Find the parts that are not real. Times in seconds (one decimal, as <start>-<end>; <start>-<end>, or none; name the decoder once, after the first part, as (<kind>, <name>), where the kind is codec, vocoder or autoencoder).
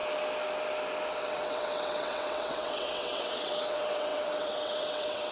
1.2-5.3 (vocoder, WaveNeXt)